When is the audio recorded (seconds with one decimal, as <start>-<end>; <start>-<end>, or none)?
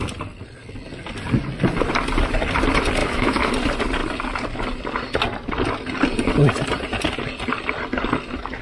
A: 0.0-3.0; 3.5-8.6